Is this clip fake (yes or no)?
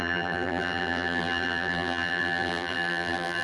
yes